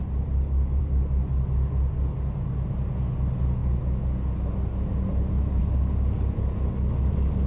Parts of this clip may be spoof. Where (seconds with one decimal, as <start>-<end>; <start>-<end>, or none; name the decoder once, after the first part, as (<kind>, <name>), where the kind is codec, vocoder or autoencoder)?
none